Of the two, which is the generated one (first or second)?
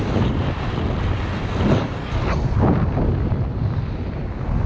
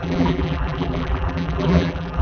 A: second